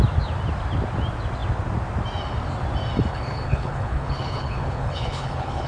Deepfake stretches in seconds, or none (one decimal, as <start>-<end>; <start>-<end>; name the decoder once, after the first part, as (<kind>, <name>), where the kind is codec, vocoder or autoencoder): 3.1-5.7 (codec, HILCodec)